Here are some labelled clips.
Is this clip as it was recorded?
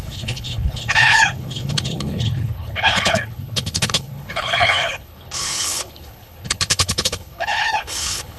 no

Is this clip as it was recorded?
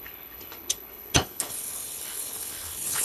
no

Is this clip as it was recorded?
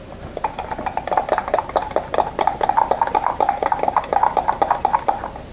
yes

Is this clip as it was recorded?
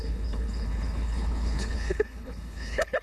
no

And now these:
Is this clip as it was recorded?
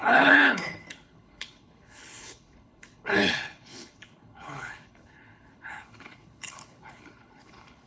no